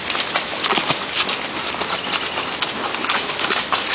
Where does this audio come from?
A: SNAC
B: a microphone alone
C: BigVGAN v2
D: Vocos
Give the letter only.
B